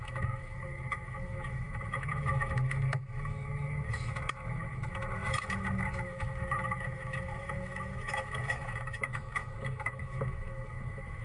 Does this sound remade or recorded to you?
remade